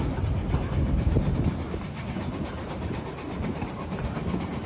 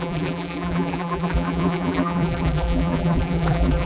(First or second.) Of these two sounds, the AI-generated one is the second